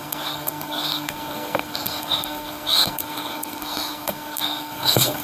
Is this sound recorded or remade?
remade